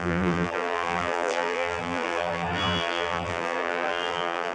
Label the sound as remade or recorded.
remade